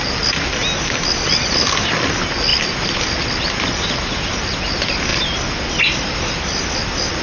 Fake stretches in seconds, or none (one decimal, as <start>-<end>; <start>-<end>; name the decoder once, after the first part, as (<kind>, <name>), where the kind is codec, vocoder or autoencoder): none